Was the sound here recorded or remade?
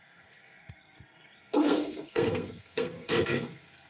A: remade